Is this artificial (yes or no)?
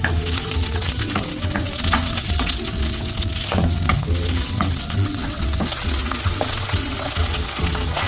yes